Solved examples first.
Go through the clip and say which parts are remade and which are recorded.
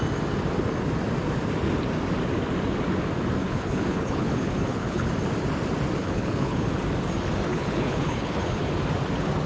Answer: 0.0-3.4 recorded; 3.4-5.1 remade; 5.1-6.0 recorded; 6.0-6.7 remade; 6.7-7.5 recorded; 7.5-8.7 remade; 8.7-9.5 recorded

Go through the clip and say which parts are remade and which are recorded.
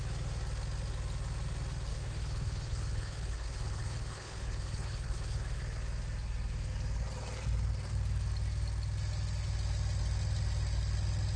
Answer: 0.0-1.9 recorded; 1.9-5.6 remade; 5.6-11.4 recorded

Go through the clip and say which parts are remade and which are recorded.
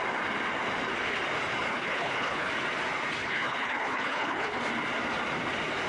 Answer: 0.0-1.7 recorded; 1.7-2.5 remade; 2.5-3.2 recorded; 3.2-4.6 remade; 4.6-5.9 recorded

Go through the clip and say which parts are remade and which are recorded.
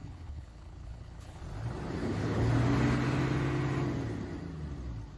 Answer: 0.0-1.4 remade; 1.4-2.0 recorded; 2.0-2.5 remade; 2.5-5.2 recorded